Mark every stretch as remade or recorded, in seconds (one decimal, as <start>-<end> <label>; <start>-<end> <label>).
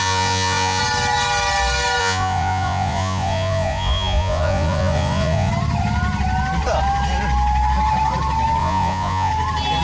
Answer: 0.0-0.8 remade; 0.8-2.0 recorded; 2.0-5.5 remade; 5.5-8.6 recorded; 8.6-9.3 remade; 9.3-9.8 recorded